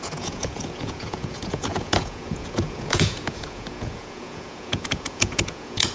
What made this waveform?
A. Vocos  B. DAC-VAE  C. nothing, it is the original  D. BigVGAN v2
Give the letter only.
A